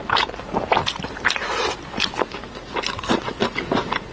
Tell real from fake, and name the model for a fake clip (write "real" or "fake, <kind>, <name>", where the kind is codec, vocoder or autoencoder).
real